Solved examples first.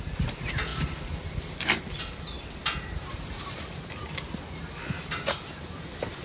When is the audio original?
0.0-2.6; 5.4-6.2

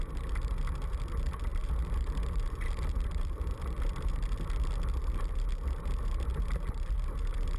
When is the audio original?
0.0-1.5; 4.1-7.6

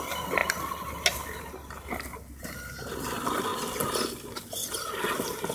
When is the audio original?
0.0-5.5

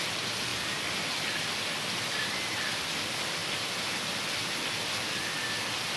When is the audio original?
0.0-0.5; 2.8-3.4; 4.1-6.0

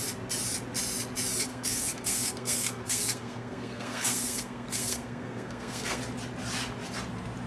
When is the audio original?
0.0-1.5; 6.0-7.5

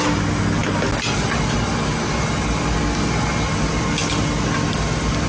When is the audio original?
0.0-5.3

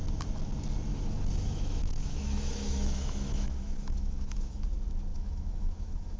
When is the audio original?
0.0-0.9; 4.6-5.1